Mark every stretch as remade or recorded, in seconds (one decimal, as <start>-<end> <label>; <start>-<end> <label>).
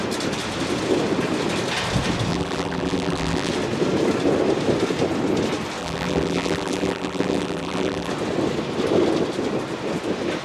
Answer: 0.0-2.3 recorded; 2.3-3.5 remade; 3.5-5.8 recorded; 5.8-8.1 remade; 8.1-10.4 recorded